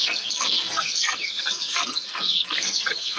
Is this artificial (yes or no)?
yes